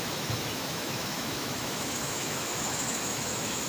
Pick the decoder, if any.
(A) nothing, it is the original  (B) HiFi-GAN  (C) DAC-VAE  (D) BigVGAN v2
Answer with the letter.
C